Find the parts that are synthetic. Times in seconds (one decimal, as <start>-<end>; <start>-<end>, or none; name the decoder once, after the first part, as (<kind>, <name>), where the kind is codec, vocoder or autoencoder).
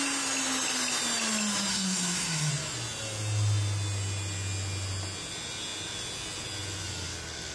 1.7-2.5 (codec, SNAC)